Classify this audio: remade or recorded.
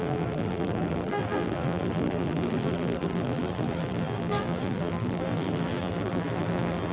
remade